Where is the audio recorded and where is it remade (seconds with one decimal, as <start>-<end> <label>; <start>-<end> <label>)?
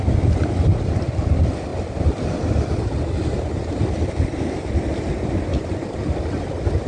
0.0-6.9 recorded